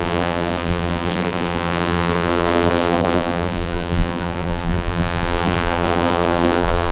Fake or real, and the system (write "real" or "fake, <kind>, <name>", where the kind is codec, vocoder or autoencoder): fake, vocoder, BigVGAN v2